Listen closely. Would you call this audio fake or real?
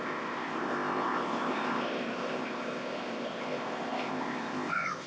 fake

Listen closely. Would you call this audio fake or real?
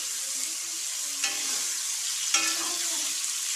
real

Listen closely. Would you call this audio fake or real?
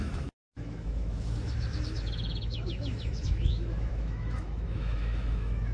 fake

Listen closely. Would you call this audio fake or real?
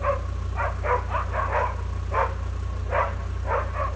real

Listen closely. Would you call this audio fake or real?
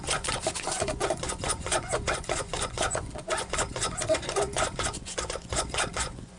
fake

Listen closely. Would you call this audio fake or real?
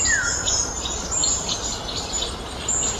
real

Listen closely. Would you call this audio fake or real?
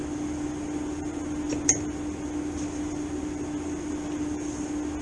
real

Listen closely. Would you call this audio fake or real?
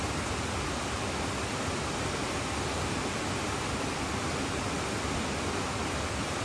real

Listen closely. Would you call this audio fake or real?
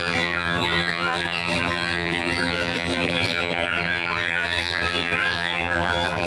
fake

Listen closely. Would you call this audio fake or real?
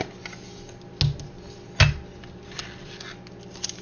real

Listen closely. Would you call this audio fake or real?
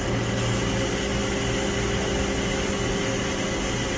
real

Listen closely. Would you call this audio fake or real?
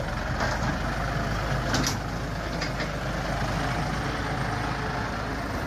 real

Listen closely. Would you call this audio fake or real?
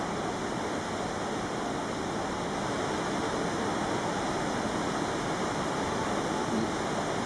real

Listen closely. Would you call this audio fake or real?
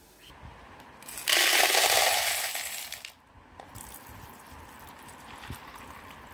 real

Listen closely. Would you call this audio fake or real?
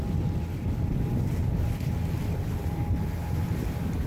real